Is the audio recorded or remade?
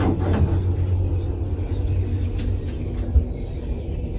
recorded